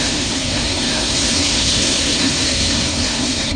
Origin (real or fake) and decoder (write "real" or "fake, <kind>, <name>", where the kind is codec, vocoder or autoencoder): fake, codec, SNAC